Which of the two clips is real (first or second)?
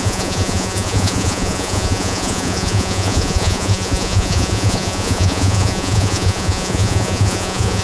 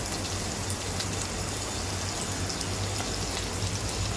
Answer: second